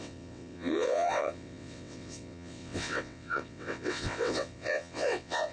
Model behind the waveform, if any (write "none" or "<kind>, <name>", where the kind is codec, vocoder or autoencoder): vocoder, WaveNeXt